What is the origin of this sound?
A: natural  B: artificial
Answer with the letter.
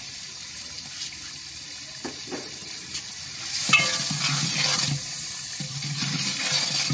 A